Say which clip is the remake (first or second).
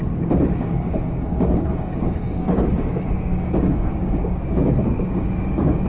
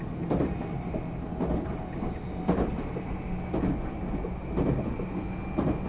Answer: first